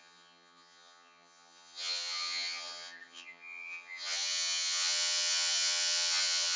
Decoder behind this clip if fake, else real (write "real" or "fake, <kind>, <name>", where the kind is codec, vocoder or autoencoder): fake, vocoder, HiFi-GAN